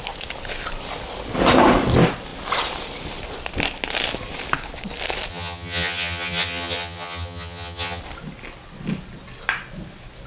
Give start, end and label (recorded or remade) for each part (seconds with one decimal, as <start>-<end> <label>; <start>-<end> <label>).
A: 0.0-5.3 recorded; 5.3-8.0 remade; 8.0-10.3 recorded